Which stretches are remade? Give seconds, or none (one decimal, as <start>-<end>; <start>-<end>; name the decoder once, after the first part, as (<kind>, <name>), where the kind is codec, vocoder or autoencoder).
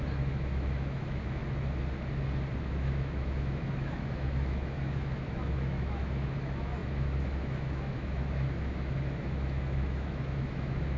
0.0-1.4 (autoencoder, DAC-VAE); 2.6-11.0